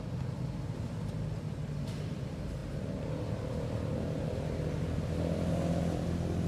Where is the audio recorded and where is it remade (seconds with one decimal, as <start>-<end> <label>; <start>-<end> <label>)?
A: 0.0-6.5 recorded